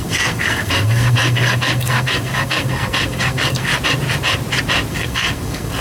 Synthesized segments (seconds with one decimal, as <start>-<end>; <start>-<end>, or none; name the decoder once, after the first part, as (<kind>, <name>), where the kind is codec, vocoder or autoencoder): 0.0-3.7 (codec, SNAC); 4.9-5.8